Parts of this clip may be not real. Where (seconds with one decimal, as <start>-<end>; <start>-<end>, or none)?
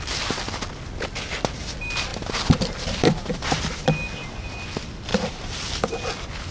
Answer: 2.1-3.7; 5.1-5.7